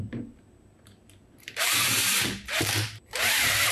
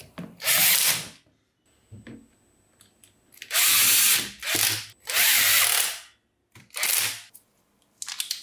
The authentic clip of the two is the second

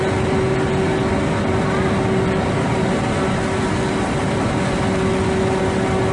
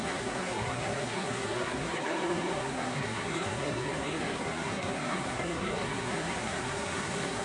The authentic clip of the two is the first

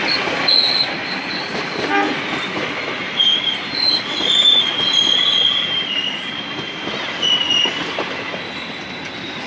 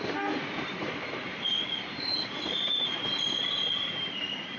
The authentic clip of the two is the first